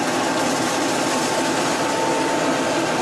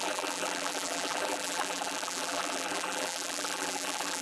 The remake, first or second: second